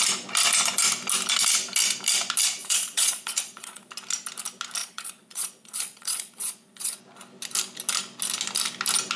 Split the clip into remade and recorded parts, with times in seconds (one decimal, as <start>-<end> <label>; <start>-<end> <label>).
0.0-2.6 recorded; 2.6-3.9 remade; 3.9-4.8 recorded; 4.8-7.0 remade; 7.0-9.2 recorded